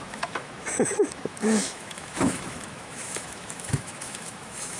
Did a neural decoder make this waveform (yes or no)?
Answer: yes